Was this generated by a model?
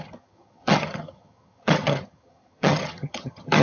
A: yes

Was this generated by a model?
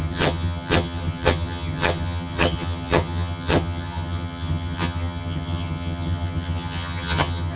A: yes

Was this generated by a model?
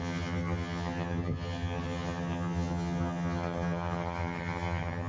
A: yes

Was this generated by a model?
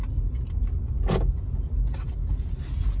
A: no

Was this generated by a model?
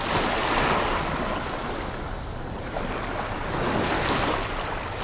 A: no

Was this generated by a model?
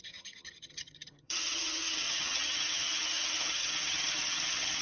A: yes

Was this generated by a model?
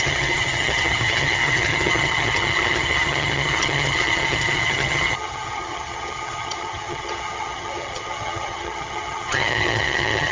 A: yes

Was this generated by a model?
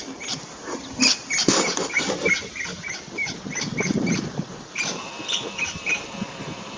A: no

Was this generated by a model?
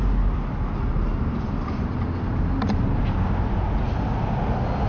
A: no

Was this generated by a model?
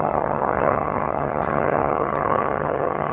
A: yes